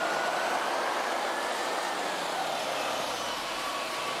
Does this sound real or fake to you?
real